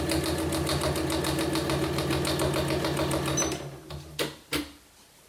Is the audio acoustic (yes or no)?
yes